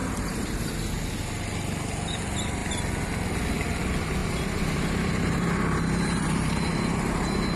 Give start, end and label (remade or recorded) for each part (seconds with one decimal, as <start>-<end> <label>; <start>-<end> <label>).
0.0-0.7 remade; 0.7-4.2 recorded; 4.2-6.7 remade; 6.7-7.6 recorded